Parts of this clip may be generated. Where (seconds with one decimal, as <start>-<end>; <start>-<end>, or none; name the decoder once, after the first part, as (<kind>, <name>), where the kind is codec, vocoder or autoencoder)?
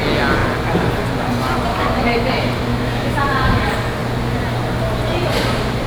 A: 1.7-2.3 (autoencoder, DAC-VAE); 2.7-3.2